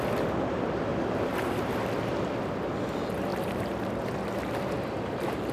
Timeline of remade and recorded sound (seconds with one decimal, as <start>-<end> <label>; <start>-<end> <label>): 0.0-0.9 recorded; 0.9-2.0 remade; 2.0-3.3 recorded; 3.3-4.0 remade; 4.0-5.5 recorded